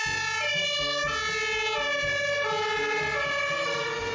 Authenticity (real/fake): real